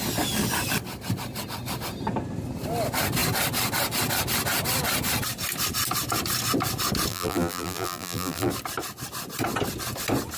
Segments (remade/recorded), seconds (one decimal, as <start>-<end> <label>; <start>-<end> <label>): 0.0-7.1 recorded; 7.1-8.5 remade; 8.5-10.4 recorded

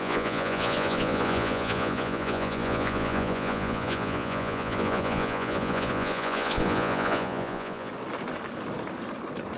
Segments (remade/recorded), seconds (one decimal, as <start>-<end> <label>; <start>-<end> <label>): 0.0-7.9 remade; 7.9-9.6 recorded

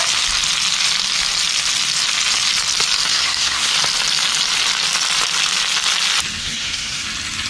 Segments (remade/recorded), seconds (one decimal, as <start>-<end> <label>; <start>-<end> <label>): 0.0-3.1 recorded; 3.1-3.7 remade; 3.7-6.4 recorded; 6.4-7.0 remade; 7.0-7.5 recorded

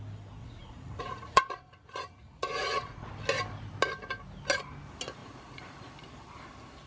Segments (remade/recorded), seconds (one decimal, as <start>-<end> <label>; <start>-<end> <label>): 0.0-0.4 recorded; 0.4-3.1 remade; 3.1-5.2 recorded; 5.2-5.9 remade; 5.9-6.9 recorded

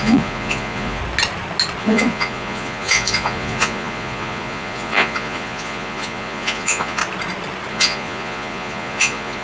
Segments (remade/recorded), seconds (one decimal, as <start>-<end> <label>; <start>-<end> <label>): 0.0-1.0 remade; 1.0-1.8 recorded; 1.8-7.0 remade; 7.0-7.7 recorded; 7.7-9.4 remade

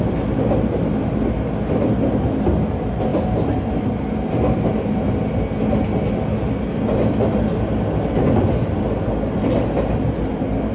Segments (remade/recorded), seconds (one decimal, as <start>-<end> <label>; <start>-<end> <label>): 0.0-10.7 recorded

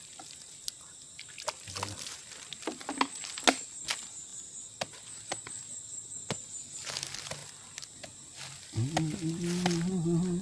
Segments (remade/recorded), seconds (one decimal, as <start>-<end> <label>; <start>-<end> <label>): 0.0-10.4 recorded